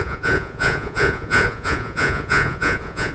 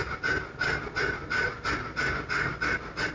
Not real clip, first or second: first